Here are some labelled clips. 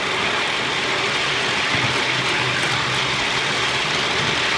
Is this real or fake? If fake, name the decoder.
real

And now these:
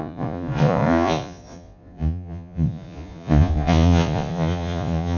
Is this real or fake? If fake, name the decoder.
fake, vocoder, Vocos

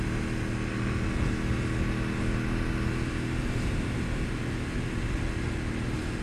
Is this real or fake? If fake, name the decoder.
real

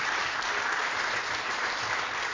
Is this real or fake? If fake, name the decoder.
real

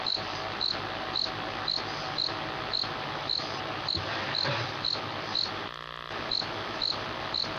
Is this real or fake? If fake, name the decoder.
real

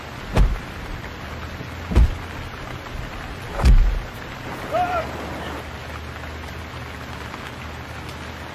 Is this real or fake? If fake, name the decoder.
real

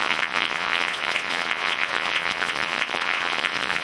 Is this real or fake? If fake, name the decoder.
fake, vocoder, Vocos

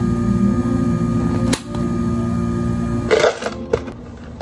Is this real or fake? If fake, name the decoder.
real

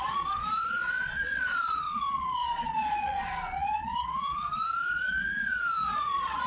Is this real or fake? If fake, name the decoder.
fake, vocoder, Vocos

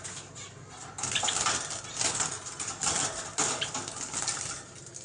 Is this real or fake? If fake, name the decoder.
real